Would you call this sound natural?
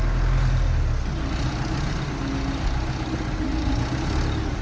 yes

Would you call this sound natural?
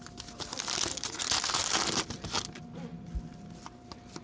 yes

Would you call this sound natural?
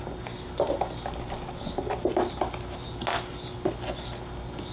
yes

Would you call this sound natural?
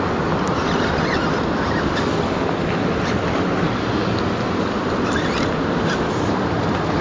yes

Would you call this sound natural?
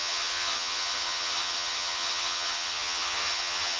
no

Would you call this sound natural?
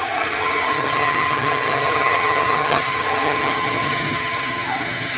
no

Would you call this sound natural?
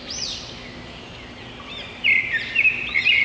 yes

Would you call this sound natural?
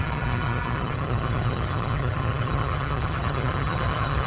no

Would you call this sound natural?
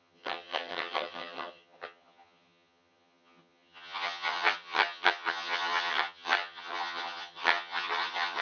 no